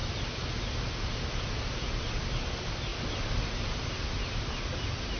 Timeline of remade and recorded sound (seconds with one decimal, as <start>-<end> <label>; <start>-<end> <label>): 0.0-5.2 recorded